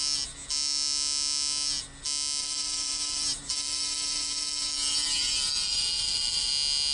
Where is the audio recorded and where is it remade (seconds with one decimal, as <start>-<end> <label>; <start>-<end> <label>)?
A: 0.0-2.4 recorded; 2.4-6.5 remade; 6.5-6.9 recorded